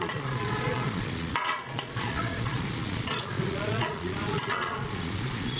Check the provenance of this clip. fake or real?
fake